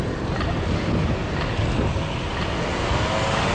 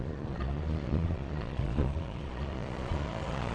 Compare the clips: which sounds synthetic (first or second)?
second